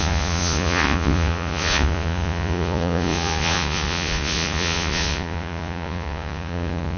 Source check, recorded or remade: remade